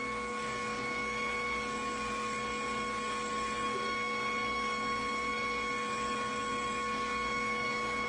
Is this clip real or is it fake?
fake